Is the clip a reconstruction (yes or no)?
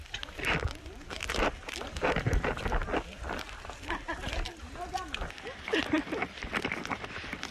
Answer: yes